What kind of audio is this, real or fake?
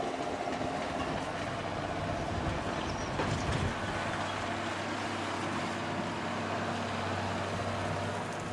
real